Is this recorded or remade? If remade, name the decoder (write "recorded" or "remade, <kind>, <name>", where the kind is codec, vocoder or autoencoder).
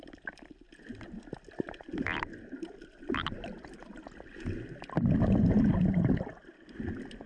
recorded